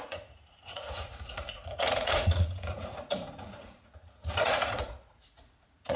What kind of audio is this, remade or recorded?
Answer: remade